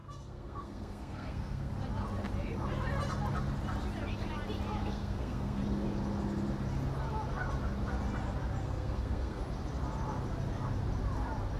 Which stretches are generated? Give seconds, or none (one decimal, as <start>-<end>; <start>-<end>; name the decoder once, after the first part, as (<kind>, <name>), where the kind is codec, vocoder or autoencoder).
0.0-1.7 (codec, SNAC); 4.8-5.6; 8.6-9.4